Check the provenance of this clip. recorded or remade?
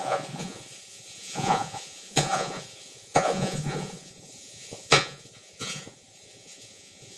remade